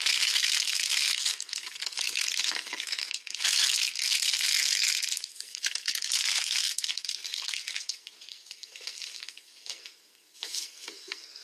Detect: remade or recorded remade